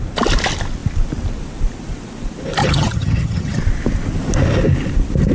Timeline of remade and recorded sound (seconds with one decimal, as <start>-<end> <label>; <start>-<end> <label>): 0.0-2.6 recorded; 2.6-3.6 remade; 3.6-5.3 recorded